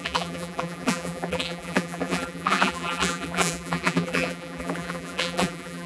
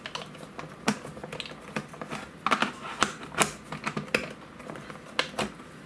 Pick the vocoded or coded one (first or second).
first